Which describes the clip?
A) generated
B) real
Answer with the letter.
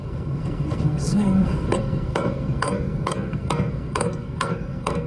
A